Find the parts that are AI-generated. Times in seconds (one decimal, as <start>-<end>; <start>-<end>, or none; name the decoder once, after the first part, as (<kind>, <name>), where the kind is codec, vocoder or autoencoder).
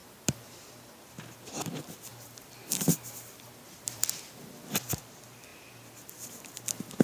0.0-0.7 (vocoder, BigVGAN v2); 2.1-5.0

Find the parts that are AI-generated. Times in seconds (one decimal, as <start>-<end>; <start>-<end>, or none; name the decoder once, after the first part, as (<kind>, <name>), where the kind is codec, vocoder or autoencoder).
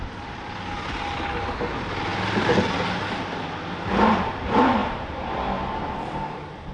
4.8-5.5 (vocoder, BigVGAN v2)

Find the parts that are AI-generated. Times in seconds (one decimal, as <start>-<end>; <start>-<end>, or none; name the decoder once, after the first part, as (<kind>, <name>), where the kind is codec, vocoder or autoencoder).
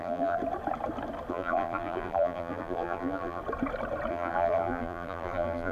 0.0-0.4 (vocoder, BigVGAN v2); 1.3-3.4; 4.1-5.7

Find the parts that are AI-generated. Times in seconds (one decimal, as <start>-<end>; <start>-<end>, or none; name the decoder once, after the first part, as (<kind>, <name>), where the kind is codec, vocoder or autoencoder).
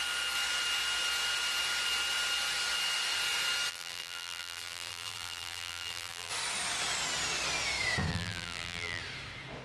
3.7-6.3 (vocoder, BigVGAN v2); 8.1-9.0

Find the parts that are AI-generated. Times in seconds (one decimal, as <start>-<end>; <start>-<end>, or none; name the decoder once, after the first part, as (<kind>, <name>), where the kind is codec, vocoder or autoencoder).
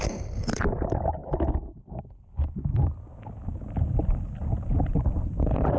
0.0-1.2 (vocoder, BigVGAN v2); 4.2-5.8